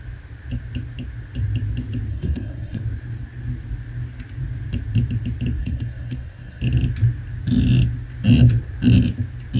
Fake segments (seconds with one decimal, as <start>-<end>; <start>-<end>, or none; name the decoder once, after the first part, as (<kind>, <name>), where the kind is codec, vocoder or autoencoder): 2.1-2.8 (codec, SNAC); 5.6-6.6